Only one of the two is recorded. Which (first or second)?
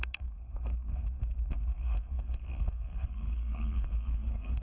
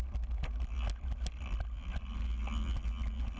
second